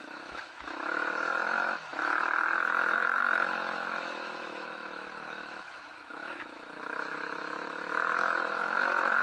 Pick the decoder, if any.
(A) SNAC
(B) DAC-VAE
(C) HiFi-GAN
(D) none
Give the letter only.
B